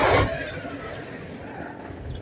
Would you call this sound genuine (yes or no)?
yes